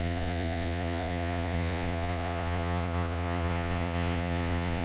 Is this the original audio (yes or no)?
no